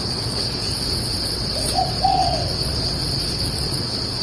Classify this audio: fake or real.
fake